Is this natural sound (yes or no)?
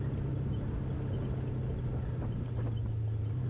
yes